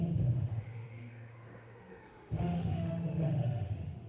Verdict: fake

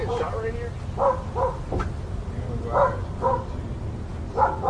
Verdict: real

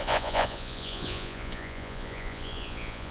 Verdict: fake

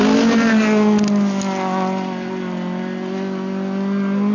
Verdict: real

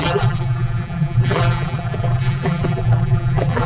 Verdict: fake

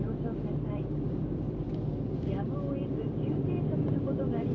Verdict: fake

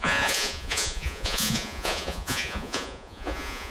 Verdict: fake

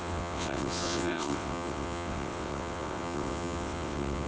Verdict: fake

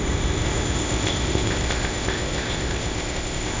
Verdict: fake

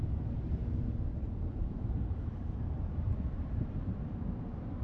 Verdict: fake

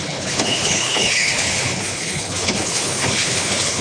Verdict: fake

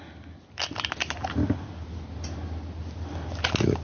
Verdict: real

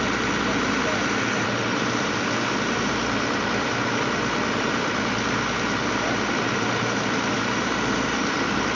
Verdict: real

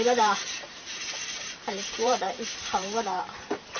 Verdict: fake